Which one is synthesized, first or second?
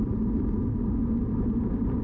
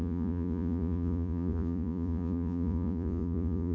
second